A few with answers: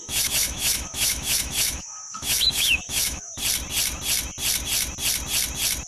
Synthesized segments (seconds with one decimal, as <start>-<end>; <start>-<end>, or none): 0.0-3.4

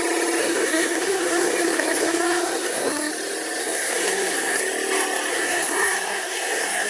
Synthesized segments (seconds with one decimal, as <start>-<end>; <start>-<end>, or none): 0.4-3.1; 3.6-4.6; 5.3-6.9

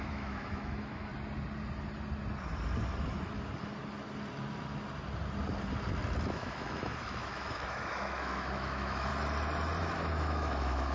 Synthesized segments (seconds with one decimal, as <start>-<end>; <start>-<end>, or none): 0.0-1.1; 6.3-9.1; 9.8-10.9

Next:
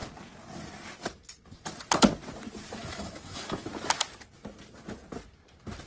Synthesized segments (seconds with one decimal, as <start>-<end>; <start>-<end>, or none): 2.8-3.7

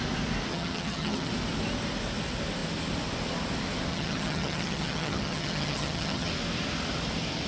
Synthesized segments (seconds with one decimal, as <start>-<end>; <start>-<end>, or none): 0.5-1.3; 3.9-6.3